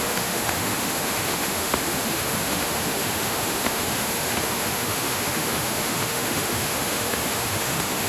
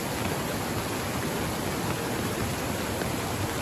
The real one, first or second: second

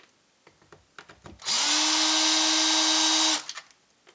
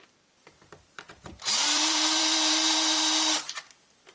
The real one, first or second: first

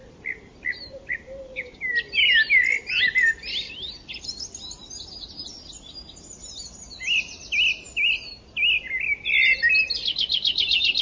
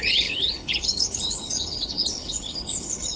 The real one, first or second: first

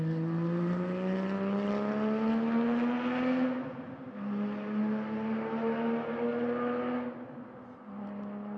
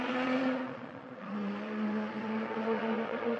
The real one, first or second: first